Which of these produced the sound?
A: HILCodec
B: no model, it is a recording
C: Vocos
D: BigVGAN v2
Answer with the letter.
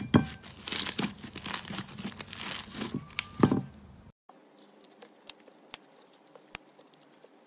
B